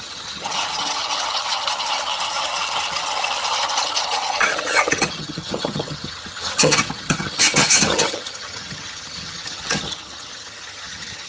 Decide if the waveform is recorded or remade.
remade